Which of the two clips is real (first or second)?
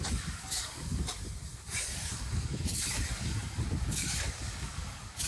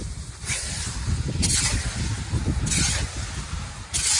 second